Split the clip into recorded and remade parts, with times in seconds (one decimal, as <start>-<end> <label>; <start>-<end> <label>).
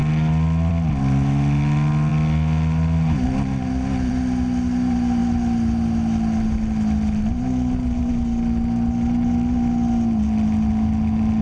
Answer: 0.0-11.4 recorded